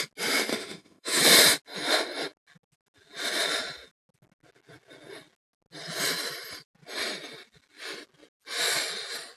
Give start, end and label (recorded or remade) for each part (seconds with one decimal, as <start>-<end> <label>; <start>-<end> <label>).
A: 0.0-0.5 recorded; 0.5-1.2 remade; 1.2-9.4 recorded

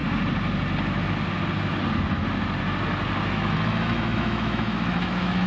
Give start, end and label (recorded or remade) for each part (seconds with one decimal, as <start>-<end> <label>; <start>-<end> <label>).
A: 0.0-3.3 recorded; 3.3-5.5 remade